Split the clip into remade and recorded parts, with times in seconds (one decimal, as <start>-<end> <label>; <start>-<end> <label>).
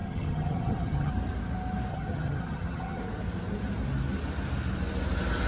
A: 0.0-1.1 remade; 1.1-1.9 recorded; 1.9-3.0 remade; 3.0-5.5 recorded